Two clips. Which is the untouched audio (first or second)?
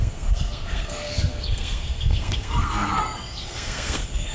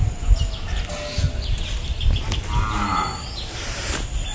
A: second